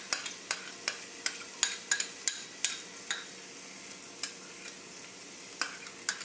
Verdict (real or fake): real